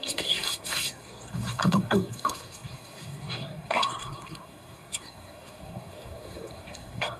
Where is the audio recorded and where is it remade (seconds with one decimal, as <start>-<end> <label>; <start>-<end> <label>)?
0.0-7.2 remade